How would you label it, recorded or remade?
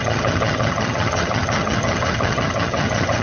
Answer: remade